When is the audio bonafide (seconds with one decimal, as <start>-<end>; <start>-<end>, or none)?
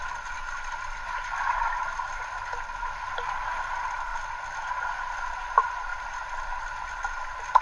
0.0-1.3; 2.4-7.6